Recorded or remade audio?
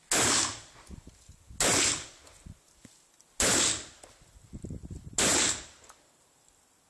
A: recorded